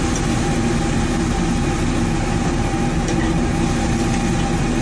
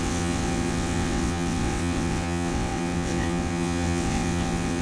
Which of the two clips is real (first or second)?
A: first